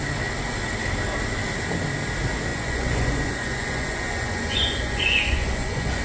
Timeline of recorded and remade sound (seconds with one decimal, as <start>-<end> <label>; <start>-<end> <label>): 0.0-2.5 recorded; 2.5-6.0 remade